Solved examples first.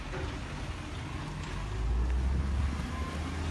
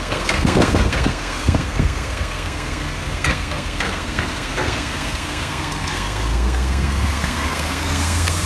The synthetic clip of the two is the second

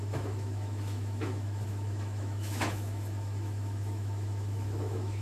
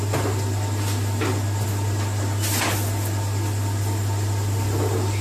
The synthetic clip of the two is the first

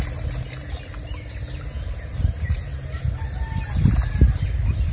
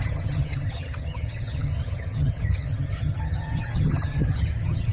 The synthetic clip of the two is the second